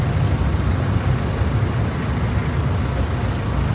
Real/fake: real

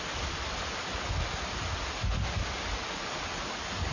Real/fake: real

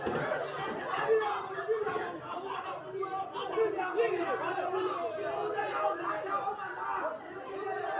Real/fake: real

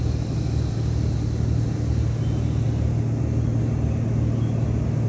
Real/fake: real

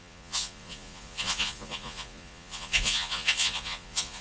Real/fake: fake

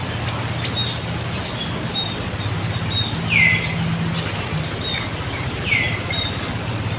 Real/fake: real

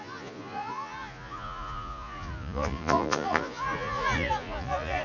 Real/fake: fake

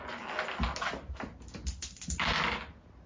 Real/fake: real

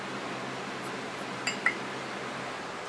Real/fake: real